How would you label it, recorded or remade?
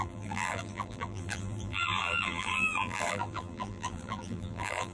remade